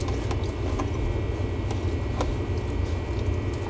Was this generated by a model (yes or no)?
no